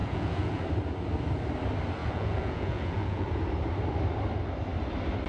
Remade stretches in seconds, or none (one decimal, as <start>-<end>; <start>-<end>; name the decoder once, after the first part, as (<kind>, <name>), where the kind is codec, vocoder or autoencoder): 0.0-0.6 (vocoder, Vocos); 2.0-3.4